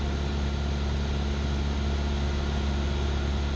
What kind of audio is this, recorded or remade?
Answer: recorded